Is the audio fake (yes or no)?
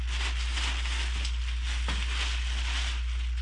no